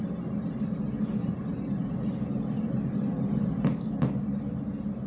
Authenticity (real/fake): real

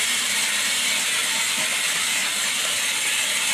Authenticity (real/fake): real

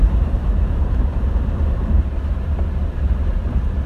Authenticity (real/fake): fake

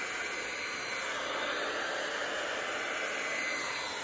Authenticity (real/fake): real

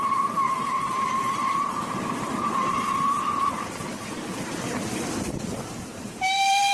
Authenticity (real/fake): fake